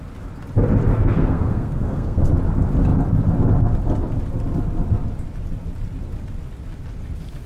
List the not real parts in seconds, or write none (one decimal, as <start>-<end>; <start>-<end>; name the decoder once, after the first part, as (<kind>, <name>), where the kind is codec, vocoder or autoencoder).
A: 0.9-2.3 (codec, SNAC)

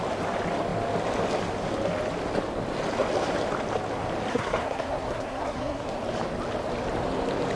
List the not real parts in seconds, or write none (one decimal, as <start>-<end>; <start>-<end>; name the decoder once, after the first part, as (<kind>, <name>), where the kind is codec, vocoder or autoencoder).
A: 4.3-6.0 (codec, SNAC)

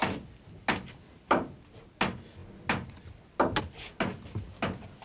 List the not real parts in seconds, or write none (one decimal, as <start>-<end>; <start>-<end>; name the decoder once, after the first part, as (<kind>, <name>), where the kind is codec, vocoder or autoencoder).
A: none